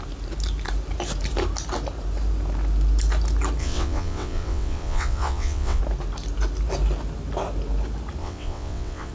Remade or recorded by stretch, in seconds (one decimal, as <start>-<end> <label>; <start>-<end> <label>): 0.0-3.6 recorded; 3.6-5.8 remade; 5.8-8.2 recorded; 8.2-9.1 remade